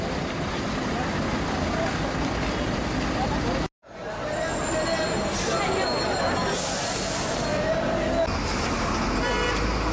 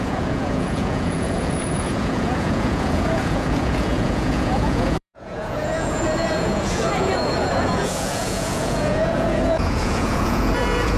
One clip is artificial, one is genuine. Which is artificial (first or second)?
second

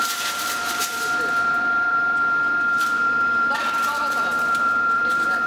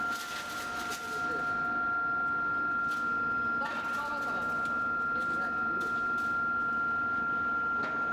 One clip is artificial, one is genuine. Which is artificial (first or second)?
first